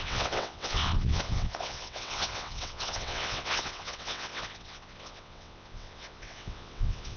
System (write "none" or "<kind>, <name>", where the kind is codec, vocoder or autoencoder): vocoder, WaveNeXt